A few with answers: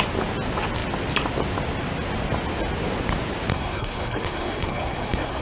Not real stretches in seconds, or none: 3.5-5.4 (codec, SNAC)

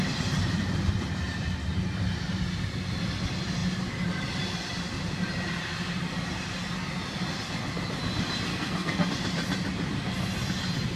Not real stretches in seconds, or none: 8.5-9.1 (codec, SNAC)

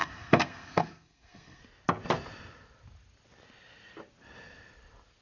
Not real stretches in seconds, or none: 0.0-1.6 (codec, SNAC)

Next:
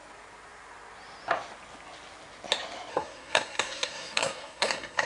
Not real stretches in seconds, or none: 2.9-5.1 (codec, SNAC)

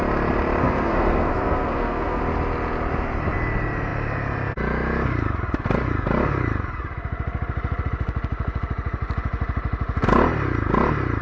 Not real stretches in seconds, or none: 0.6-2.2 (codec, SNAC)